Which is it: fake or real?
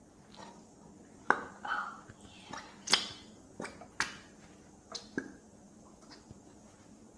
real